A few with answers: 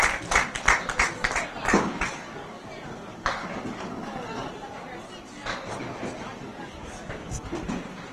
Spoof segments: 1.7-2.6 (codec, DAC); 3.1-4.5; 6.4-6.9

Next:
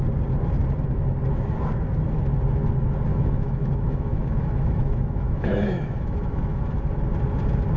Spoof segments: 3.1-6.8 (autoencoder, DAC-VAE)

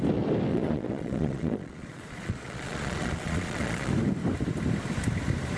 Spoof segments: 0.5-3.9 (vocoder, Vocos)

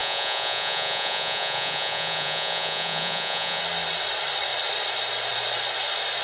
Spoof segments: 0.0-3.6 (vocoder, Vocos)

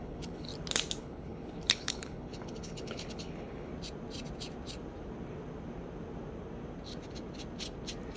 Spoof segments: 0.0-0.5 (codec, HILCodec); 1.0-3.7